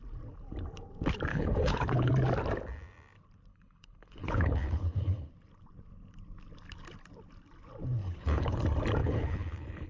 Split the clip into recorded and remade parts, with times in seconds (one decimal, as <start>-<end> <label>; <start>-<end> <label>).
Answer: 0.0-1.3 recorded; 1.3-2.1 remade; 2.1-3.5 recorded; 3.5-5.3 remade; 5.3-8.0 recorded; 8.0-8.6 remade; 8.6-9.0 recorded; 9.0-9.9 remade